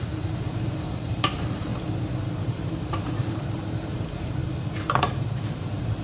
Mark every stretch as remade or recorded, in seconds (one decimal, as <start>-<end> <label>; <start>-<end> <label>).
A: 0.0-1.7 remade; 1.7-2.4 recorded; 2.4-4.4 remade; 4.4-5.0 recorded; 5.0-6.0 remade